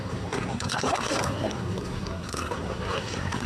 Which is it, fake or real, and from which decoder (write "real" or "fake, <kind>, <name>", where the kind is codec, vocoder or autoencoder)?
fake, codec, SNAC